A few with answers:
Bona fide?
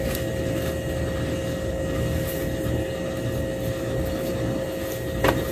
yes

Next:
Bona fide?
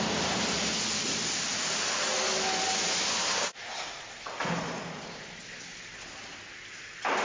yes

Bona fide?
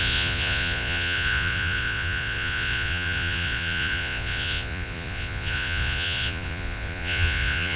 no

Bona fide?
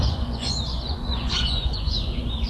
no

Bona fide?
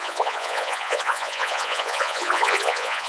no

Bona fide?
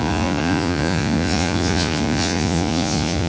no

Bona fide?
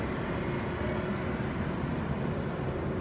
yes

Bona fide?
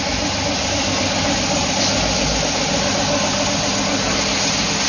yes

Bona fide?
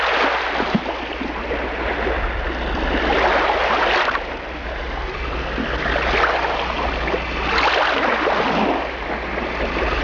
yes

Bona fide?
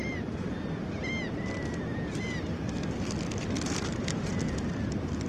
yes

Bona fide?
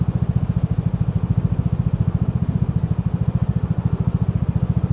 yes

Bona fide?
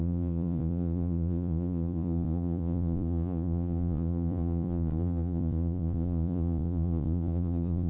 no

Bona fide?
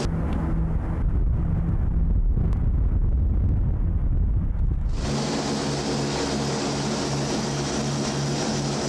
yes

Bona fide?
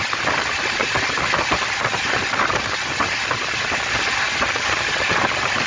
yes